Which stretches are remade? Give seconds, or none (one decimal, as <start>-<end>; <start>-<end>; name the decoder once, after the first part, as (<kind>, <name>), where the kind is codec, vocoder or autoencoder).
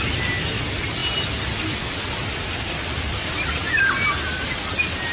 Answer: none